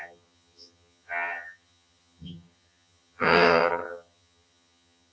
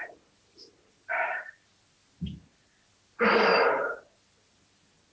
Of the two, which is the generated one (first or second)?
first